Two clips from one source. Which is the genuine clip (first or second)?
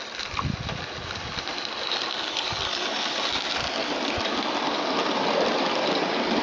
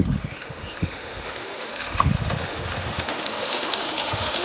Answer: first